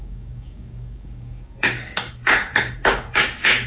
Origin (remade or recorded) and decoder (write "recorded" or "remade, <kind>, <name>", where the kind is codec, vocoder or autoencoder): remade, codec, DAC